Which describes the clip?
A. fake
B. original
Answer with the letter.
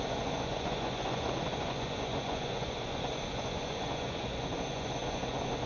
A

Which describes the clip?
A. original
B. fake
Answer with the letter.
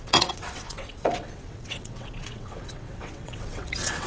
B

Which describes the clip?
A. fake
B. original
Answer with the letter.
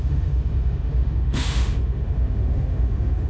A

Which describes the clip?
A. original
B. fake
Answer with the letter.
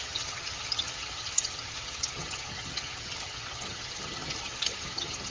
B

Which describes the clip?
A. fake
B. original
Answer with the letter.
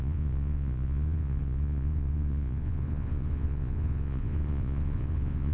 A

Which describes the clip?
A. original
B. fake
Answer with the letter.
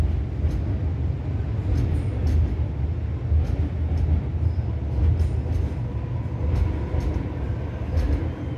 A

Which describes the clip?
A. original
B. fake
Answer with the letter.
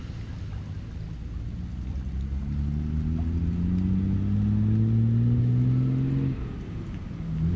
A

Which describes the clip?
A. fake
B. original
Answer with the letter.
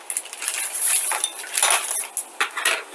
B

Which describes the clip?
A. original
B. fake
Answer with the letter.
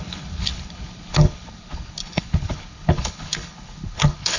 B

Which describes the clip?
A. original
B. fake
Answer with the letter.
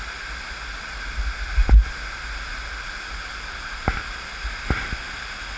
A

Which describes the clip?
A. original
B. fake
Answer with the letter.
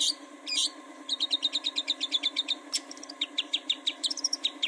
B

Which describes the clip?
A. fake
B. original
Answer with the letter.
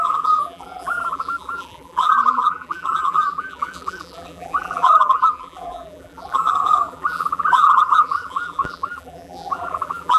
A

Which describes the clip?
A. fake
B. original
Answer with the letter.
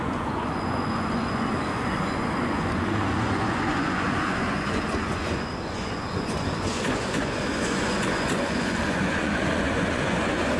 A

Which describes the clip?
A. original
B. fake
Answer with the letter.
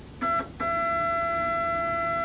A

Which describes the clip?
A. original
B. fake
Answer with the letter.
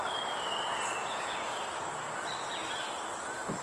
A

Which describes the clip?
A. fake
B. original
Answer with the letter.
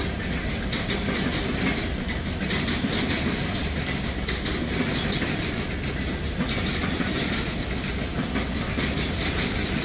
B